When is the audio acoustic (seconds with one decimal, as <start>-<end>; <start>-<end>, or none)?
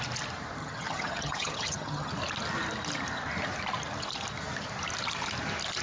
0.0-0.6; 2.1-5.8